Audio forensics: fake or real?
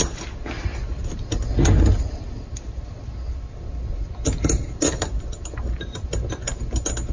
real